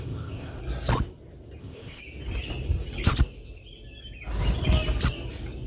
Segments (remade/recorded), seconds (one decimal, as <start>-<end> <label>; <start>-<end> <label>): 0.0-0.6 remade; 0.6-1.6 recorded; 1.6-2.0 remade; 2.0-5.7 recorded